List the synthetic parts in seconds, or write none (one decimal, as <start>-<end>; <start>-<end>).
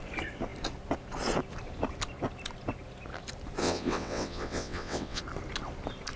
3.6-5.2